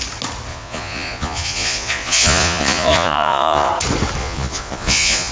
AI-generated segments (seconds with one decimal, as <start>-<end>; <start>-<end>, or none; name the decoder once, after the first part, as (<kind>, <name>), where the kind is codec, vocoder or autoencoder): 0.5-3.7 (vocoder, Vocos); 4.2-5.3